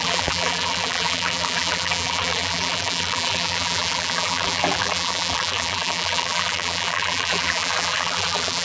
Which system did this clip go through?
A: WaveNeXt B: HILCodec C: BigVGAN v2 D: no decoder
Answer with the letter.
C